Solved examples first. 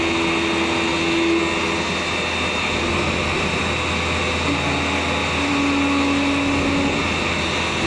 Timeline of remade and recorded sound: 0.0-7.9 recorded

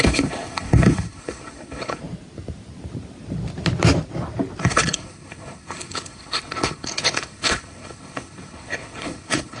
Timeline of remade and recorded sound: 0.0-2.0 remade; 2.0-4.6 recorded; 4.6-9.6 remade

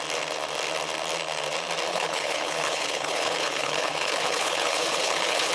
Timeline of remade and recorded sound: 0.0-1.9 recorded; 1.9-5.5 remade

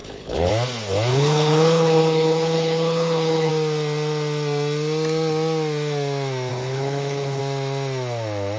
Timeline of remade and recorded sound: 0.0-0.5 remade; 0.5-1.1 recorded; 1.1-3.5 remade; 3.5-6.5 recorded; 6.5-7.4 remade; 7.4-8.6 recorded

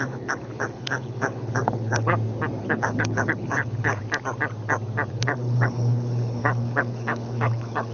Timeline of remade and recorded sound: 0.0-2.1 remade; 2.1-2.6 recorded; 2.6-4.0 remade; 4.0-5.1 recorded; 5.1-7.9 remade

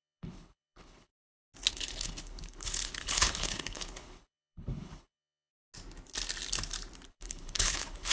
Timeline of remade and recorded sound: 0.0-1.1 remade; 1.1-1.7 recorded; 1.7-5.5 remade; 5.5-7.1 recorded; 7.1-8.1 remade